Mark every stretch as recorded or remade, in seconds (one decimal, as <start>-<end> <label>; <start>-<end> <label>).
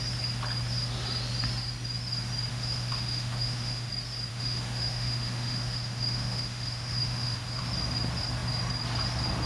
0.0-2.5 recorded; 2.5-3.9 remade; 3.9-4.3 recorded; 4.3-7.6 remade; 7.6-9.5 recorded